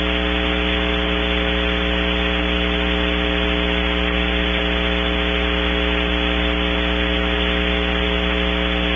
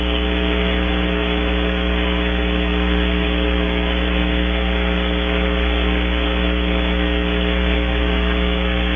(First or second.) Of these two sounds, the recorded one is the first